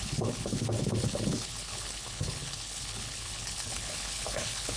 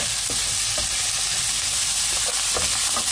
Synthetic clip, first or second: first